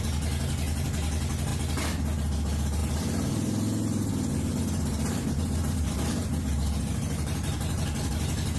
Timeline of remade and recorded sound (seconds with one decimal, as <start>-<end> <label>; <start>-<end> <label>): 0.0-2.8 recorded; 2.8-4.1 remade; 4.1-4.9 recorded; 4.9-8.1 remade; 8.1-8.6 recorded